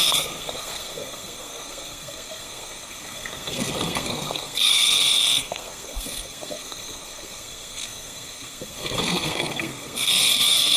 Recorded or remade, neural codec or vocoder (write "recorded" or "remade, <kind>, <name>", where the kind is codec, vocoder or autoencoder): remade, codec, SNAC